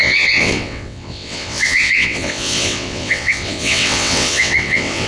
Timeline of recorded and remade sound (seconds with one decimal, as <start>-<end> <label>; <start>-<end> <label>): 0.0-5.1 remade